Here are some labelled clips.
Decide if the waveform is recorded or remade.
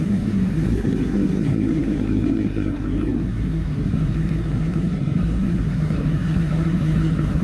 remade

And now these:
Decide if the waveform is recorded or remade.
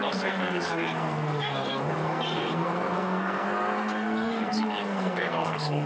remade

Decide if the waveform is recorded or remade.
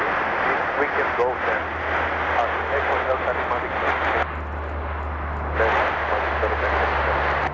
recorded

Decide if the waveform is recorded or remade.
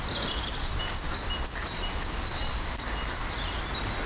recorded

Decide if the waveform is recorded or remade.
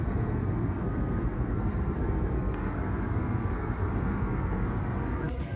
remade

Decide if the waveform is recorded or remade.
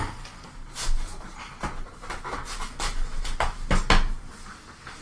recorded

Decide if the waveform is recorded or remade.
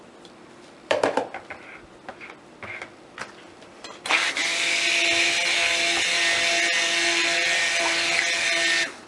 recorded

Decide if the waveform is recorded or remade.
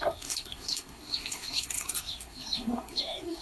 remade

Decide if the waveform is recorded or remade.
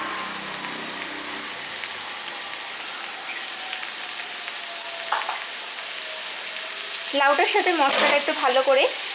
recorded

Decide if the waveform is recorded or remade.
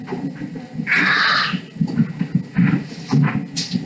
recorded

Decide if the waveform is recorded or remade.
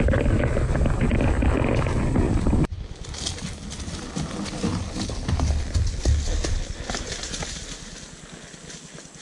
recorded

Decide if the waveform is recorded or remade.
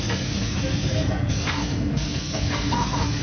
remade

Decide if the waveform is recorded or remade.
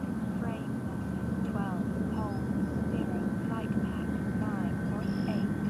recorded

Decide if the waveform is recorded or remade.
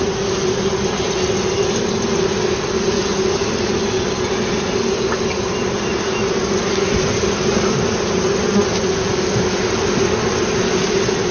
recorded